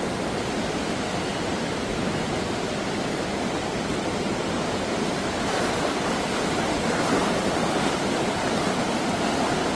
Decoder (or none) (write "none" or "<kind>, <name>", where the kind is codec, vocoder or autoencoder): vocoder, BigVGAN v2